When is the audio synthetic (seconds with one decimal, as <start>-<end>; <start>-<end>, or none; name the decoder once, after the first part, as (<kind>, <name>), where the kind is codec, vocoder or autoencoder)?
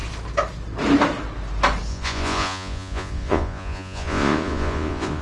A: 1.9-5.2 (vocoder, Vocos)